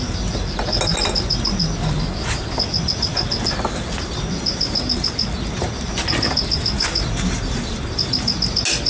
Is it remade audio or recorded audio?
recorded